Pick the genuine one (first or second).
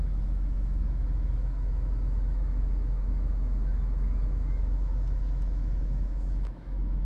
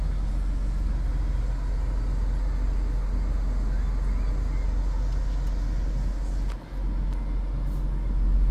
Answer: second